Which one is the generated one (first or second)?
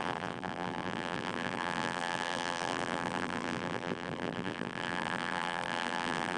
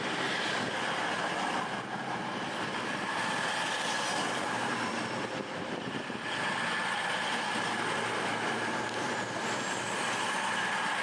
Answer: first